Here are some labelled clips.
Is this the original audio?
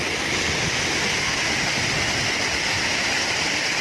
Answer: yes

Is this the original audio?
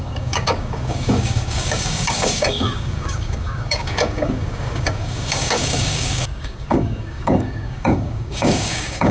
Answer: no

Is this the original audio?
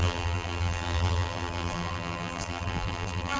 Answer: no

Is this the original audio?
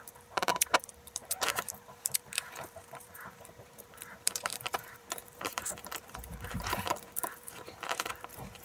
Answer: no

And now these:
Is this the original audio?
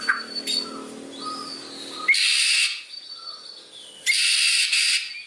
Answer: yes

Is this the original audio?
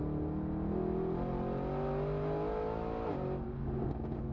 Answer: yes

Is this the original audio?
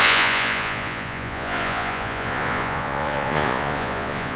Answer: no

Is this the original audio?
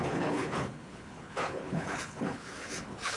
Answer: no